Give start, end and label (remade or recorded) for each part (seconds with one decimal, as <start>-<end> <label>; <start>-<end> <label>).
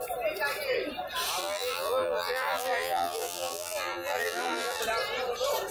0.0-1.4 recorded; 1.4-4.8 remade; 4.8-5.7 recorded